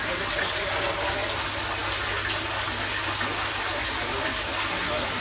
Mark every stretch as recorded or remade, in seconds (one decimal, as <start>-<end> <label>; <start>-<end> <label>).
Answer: 0.0-5.2 recorded